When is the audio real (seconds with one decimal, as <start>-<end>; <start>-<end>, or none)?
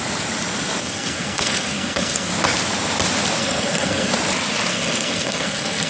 0.0-0.8; 2.3-3.4; 4.1-4.7